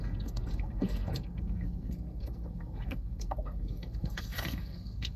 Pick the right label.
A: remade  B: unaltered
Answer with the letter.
A